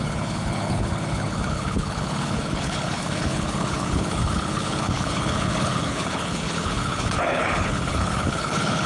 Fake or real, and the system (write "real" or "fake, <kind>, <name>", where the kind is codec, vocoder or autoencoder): fake, codec, HILCodec